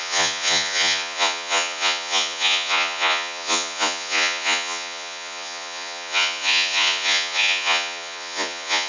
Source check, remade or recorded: remade